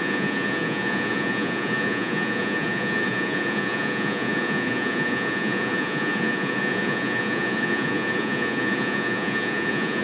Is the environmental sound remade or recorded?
remade